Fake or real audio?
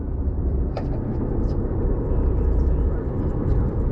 fake